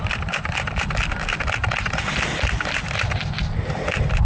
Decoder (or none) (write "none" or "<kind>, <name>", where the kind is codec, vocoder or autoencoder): none